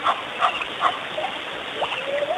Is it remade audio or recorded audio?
recorded